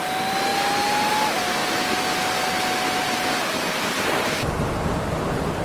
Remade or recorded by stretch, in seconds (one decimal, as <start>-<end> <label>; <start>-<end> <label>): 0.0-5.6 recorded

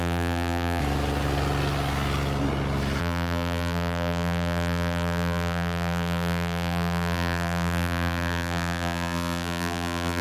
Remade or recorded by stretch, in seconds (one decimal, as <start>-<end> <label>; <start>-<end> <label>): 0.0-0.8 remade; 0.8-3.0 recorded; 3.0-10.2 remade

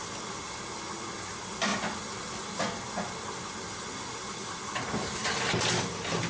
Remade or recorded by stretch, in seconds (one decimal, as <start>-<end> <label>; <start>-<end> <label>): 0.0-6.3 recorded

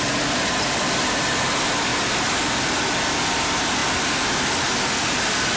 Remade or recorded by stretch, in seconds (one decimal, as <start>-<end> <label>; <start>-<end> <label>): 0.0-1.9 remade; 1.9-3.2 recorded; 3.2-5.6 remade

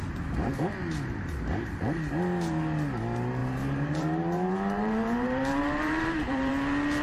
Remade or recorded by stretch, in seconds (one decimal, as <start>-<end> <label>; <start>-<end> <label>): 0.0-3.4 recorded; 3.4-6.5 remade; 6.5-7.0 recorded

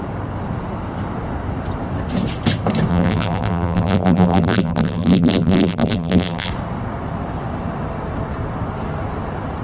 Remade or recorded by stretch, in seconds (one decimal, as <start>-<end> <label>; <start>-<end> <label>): 0.0-2.9 recorded; 2.9-6.5 remade; 6.5-9.6 recorded

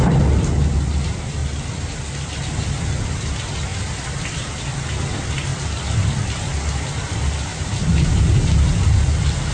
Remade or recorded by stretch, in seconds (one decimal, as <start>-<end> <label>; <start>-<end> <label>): 0.0-3.7 recorded; 3.7-5.0 remade; 5.0-7.5 recorded; 7.5-8.1 remade; 8.1-9.5 recorded

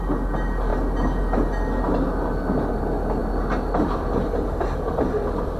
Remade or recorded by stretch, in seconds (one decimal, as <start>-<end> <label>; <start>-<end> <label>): 0.0-5.6 recorded